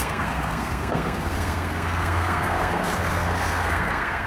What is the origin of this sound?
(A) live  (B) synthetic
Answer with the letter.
B